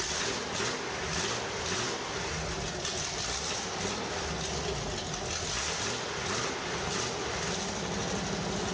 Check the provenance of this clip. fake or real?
real